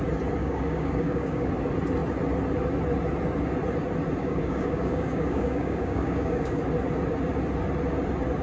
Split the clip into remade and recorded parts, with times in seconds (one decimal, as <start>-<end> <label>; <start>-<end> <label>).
0.0-0.4 recorded; 0.4-1.5 remade; 1.5-4.2 recorded; 4.2-6.6 remade; 6.6-8.4 recorded